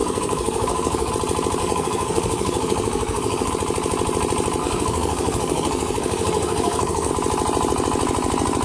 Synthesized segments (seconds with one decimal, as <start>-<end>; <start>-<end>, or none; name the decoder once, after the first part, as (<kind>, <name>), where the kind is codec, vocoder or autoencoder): 0.0-1.1 (codec, SNAC); 1.6-3.5; 4.6-7.1